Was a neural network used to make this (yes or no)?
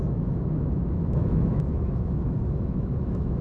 yes